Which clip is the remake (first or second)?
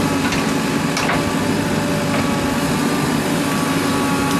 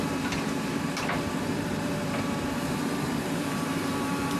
second